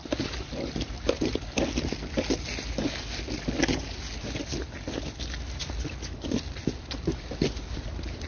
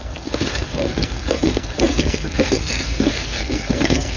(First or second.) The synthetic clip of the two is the second